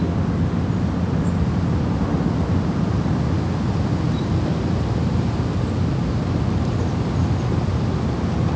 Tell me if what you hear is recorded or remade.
recorded